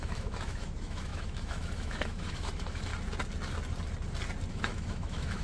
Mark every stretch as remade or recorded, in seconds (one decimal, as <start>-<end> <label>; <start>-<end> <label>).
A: 0.0-2.9 remade; 2.9-4.5 recorded; 4.5-5.4 remade